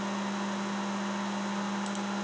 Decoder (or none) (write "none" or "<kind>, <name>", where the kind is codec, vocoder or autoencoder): none